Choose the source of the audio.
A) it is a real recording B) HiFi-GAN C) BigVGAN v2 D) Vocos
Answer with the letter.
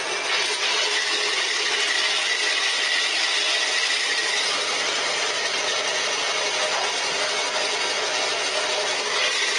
A